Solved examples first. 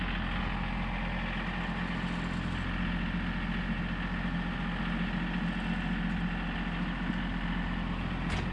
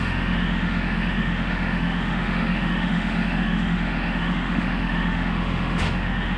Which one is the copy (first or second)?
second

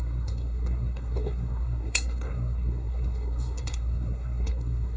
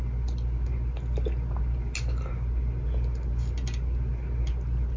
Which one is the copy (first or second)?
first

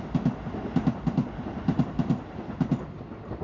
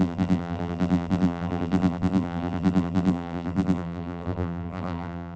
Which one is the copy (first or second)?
second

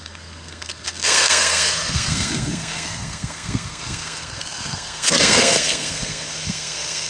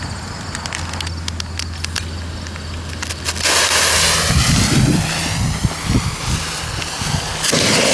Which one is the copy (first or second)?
first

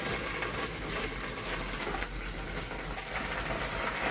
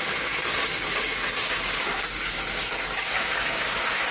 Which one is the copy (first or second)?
second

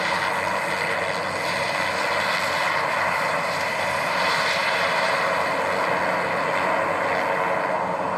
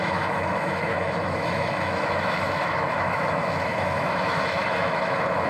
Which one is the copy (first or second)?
second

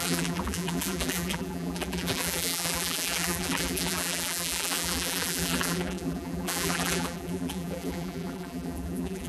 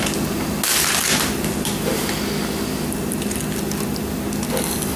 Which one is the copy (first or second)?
first